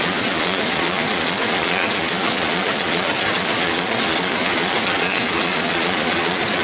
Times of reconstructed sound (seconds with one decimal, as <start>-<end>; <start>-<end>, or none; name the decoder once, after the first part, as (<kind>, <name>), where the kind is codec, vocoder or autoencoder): 0.0-6.6 (vocoder, Vocos)